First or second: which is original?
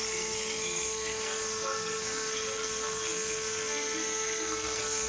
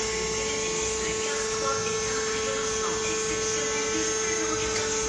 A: second